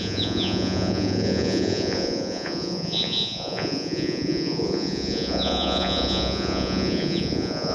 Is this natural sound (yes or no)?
no